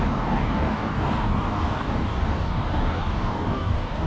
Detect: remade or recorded remade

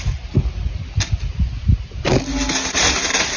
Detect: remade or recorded recorded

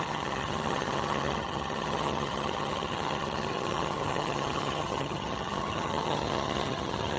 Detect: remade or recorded remade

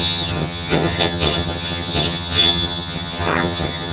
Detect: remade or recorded remade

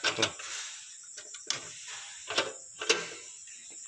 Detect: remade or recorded recorded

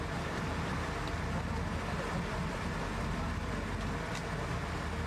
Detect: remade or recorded recorded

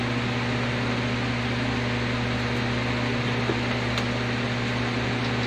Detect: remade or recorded recorded